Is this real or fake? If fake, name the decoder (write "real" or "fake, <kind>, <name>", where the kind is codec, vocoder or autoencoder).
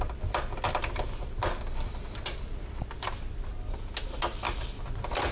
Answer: real